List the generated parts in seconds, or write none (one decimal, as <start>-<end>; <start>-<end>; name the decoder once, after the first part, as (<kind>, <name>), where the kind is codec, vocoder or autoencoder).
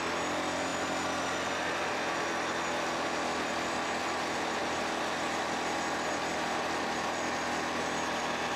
none